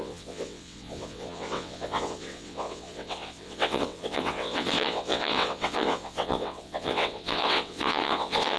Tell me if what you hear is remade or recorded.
remade